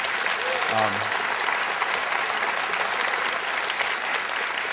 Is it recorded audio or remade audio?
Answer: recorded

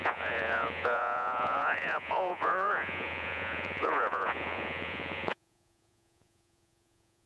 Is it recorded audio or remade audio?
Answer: remade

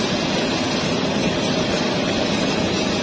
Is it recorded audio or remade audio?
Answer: recorded